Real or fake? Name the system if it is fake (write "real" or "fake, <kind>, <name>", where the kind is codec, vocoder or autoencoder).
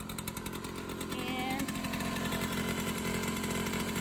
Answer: real